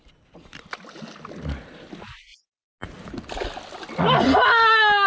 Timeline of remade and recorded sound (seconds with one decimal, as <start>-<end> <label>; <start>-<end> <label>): 0.0-5.1 recorded